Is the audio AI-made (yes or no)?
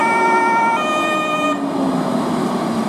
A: no